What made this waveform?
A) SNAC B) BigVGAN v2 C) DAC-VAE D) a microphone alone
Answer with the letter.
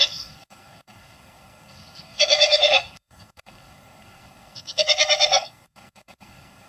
A